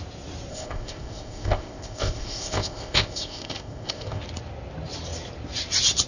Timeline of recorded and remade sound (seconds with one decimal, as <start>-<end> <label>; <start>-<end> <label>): 0.0-0.5 recorded; 0.5-4.2 remade; 4.2-6.1 recorded